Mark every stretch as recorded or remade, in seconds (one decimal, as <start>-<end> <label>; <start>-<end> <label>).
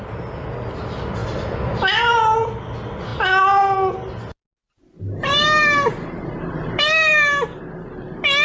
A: 0.0-1.2 recorded; 1.2-2.5 remade; 2.5-8.4 recorded